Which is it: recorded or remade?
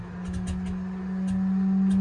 recorded